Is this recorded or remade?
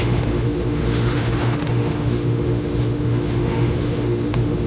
remade